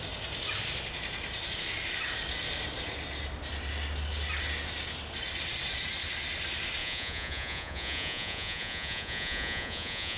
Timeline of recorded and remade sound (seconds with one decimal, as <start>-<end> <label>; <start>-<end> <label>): 0.0-6.8 recorded; 6.8-10.2 remade